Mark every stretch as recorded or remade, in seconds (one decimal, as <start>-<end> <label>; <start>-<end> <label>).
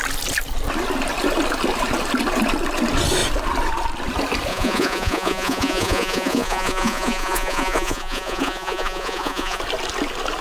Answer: 0.0-4.5 recorded; 4.5-9.6 remade; 9.6-10.4 recorded